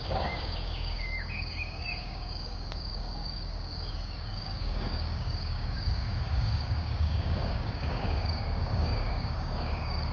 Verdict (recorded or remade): remade